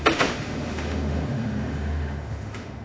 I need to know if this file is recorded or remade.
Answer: remade